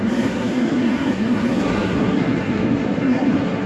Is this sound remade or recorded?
remade